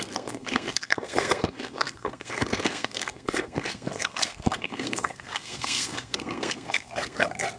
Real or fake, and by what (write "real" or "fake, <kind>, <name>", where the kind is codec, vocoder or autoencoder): fake, codec, SNAC